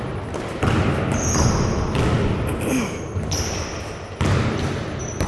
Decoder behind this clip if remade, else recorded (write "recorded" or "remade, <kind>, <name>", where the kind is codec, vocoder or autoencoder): recorded